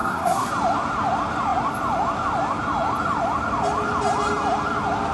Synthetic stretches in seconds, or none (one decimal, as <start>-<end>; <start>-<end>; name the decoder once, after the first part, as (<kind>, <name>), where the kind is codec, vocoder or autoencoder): 0.0-0.5 (codec, SNAC)